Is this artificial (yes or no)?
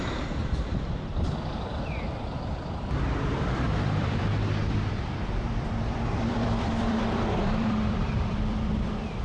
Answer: yes